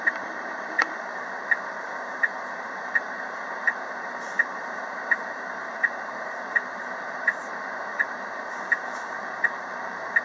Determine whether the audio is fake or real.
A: fake